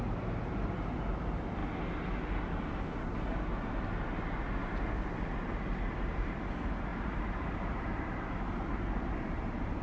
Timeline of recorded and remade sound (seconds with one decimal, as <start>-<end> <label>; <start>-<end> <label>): 0.0-4.6 recorded; 4.6-6.4 remade; 6.4-6.9 recorded; 6.9-7.9 remade; 7.9-9.8 recorded

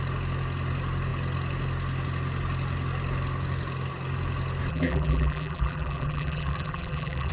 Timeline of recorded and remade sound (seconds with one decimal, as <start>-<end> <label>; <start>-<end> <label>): 0.0-4.7 recorded; 4.7-7.3 remade

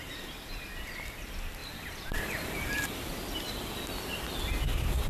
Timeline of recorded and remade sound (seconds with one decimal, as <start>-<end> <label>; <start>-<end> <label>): 0.0-1.6 recorded; 1.6-5.1 remade

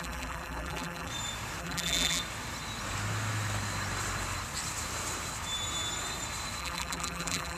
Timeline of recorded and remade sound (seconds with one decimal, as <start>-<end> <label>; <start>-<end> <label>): 0.0-1.1 remade; 1.1-1.6 recorded; 1.6-2.2 remade; 2.2-6.6 recorded; 6.6-7.6 remade

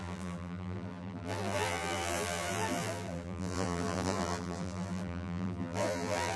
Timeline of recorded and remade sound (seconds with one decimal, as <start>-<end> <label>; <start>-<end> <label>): 0.0-6.4 remade

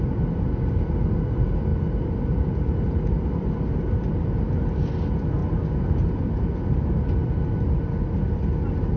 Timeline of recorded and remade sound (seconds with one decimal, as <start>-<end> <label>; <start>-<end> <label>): 0.0-9.0 recorded

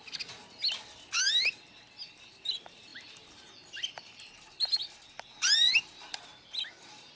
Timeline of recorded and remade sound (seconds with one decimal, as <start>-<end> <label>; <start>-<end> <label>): 0.0-2.9 recorded; 2.9-6.6 remade; 6.6-7.2 recorded

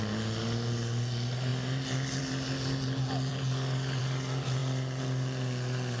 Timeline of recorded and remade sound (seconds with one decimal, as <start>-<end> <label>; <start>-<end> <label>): 0.0-6.0 recorded